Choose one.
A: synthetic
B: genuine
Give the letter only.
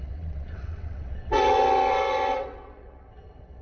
A